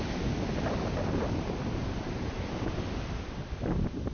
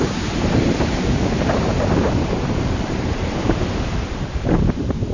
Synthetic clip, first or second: second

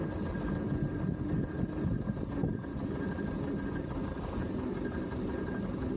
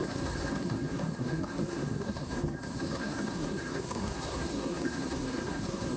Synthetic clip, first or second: second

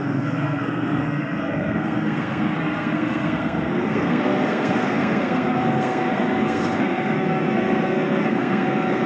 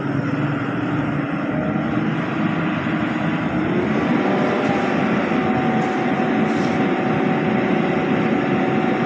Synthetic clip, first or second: first